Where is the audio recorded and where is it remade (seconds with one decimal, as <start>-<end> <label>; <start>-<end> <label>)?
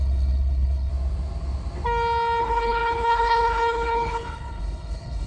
0.0-0.9 remade; 0.9-2.4 recorded; 2.4-5.3 remade